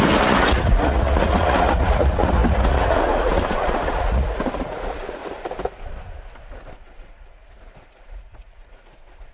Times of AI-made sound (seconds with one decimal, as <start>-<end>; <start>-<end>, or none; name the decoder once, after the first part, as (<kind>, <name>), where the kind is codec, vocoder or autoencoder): 0.0-5.2 (vocoder, Vocos); 6.7-9.3